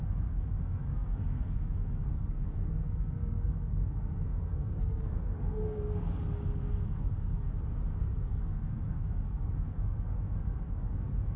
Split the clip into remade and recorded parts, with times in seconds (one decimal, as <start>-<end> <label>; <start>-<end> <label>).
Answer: 0.0-5.9 remade; 5.9-6.6 recorded; 6.6-7.5 remade; 7.5-8.0 recorded; 8.0-11.4 remade